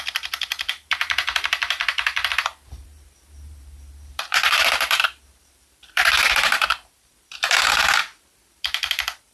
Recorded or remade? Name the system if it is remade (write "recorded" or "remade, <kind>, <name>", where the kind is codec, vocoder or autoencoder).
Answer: remade, vocoder, BigVGAN v2